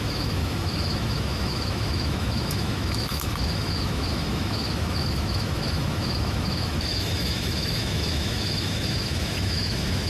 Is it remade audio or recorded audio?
remade